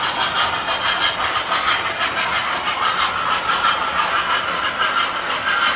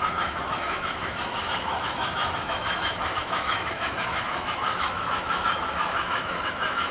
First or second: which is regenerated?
second